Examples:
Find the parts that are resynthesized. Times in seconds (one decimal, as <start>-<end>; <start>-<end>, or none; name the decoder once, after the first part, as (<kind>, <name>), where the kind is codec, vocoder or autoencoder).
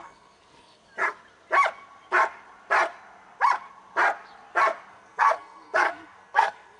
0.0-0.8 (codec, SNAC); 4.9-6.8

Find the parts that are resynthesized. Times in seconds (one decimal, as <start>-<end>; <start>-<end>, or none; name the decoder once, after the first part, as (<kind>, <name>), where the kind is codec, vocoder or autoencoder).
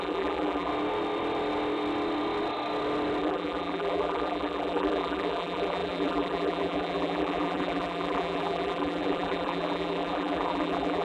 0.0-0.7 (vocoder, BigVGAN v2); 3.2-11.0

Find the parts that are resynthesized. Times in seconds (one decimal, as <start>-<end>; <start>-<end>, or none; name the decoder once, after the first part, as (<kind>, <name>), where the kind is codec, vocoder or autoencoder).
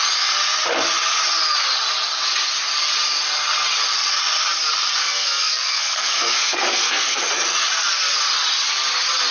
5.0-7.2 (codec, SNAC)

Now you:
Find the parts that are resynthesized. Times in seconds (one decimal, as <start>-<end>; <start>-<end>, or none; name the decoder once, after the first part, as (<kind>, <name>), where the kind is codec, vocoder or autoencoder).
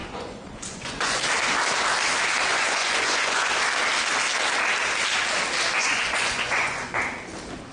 0.0-1.2 (vocoder, Vocos); 2.5-3.5; 5.8-7.0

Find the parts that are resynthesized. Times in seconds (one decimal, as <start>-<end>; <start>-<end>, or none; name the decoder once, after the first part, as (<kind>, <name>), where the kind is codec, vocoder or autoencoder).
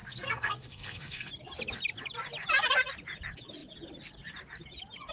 0.0-1.3 (codec, SNAC)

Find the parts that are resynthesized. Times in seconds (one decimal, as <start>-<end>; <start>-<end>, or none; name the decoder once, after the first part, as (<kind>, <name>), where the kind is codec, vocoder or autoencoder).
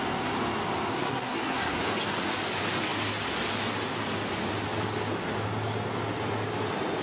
0.9-1.8 (codec, SNAC)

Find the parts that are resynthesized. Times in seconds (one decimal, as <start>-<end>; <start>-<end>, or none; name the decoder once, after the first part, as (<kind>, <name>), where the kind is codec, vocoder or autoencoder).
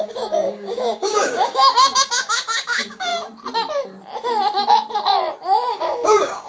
0.0-3.1 (codec, DAC); 5.7-6.5